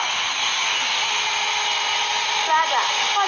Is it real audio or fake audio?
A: real